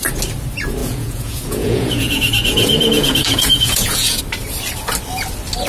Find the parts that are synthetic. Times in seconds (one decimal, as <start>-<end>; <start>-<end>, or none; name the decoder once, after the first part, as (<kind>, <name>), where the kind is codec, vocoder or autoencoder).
0.8-4.2 (vocoder, Vocos)